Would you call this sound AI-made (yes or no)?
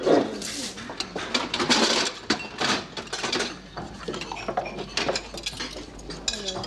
no